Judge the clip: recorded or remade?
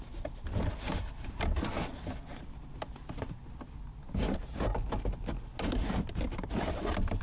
recorded